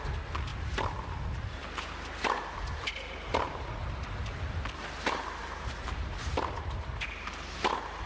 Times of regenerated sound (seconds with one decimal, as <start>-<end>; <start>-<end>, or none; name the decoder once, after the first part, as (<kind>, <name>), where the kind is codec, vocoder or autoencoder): none